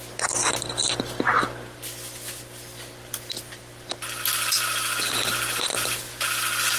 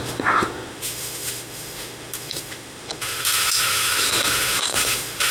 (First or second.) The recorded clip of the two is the first